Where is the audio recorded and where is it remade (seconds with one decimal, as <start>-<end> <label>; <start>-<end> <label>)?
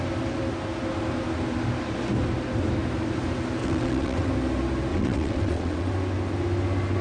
0.0-3.6 recorded; 3.6-4.3 remade; 4.3-4.9 recorded; 4.9-5.9 remade; 5.9-7.0 recorded